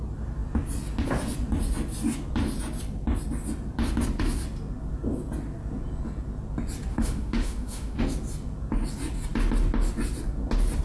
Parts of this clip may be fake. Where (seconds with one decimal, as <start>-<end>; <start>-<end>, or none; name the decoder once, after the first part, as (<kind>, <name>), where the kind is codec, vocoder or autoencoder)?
6.9-8.0 (autoencoder, DAC-VAE)